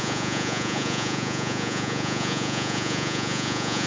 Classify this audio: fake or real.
fake